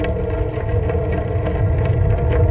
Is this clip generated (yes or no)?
no